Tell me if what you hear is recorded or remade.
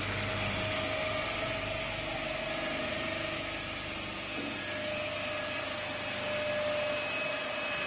recorded